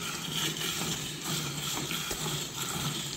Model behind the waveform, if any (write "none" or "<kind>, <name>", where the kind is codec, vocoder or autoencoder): vocoder, BigVGAN v2